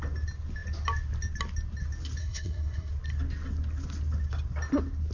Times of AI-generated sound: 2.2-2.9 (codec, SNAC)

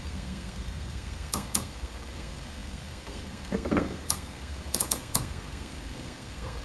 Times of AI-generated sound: 0.0-6.6 (codec, SNAC)